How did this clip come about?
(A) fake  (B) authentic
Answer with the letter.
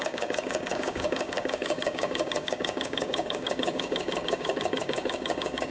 A